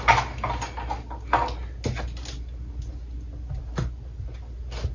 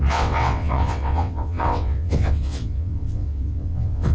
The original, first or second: first